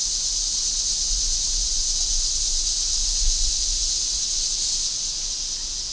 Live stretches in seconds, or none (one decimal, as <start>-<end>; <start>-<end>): 0.0-5.9